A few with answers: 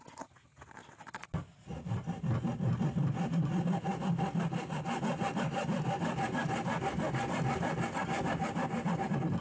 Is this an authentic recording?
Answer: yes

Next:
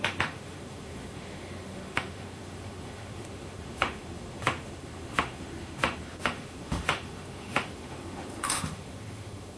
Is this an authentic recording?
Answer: no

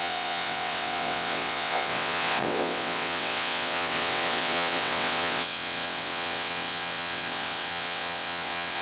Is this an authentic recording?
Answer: no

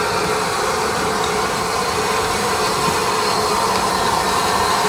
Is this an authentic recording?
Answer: no